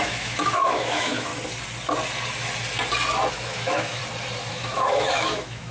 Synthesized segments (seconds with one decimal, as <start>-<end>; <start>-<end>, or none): 0.0-1.3; 3.3-4.0; 4.5-5.7